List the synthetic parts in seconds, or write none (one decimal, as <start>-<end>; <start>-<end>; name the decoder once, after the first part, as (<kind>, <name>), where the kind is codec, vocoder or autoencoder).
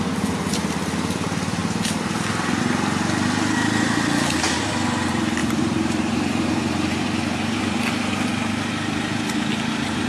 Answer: 5.4-7.6 (vocoder, BigVGAN v2)